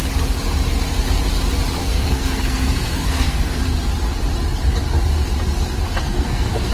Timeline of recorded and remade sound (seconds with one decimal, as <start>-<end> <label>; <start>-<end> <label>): 0.0-1.8 recorded; 1.8-3.6 remade; 3.6-6.0 recorded; 6.0-6.7 remade